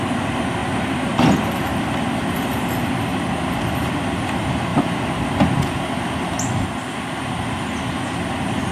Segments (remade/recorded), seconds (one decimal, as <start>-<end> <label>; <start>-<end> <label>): 0.0-0.6 recorded; 0.6-2.6 remade; 2.6-4.7 recorded; 4.7-5.7 remade; 5.7-8.7 recorded